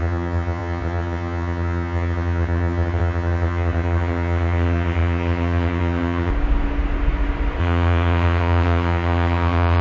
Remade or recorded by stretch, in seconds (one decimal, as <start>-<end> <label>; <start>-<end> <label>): 0.0-6.3 remade; 6.3-7.6 recorded; 7.6-9.8 remade